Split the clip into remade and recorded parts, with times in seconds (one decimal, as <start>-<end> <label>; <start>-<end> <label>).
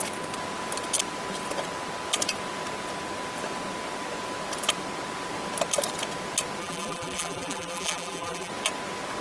0.0-6.6 recorded; 6.6-8.5 remade; 8.5-9.2 recorded